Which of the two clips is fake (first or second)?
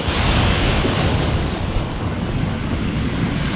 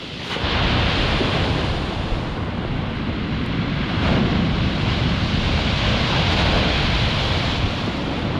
first